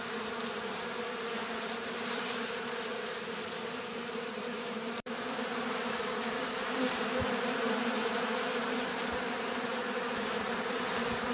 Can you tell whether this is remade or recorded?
remade